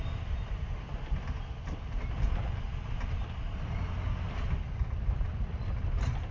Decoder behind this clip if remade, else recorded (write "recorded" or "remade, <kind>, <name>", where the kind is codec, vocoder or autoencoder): recorded